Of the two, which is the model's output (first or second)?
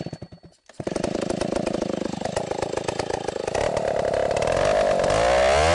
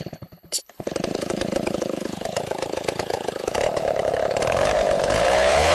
second